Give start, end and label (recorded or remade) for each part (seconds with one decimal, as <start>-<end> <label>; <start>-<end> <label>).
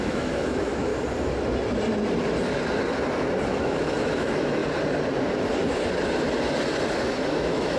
0.0-0.9 remade; 0.9-3.6 recorded; 3.6-4.6 remade; 4.6-7.3 recorded; 7.3-7.8 remade